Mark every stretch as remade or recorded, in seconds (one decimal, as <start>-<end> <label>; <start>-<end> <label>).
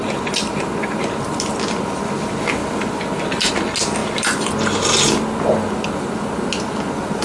0.0-7.2 recorded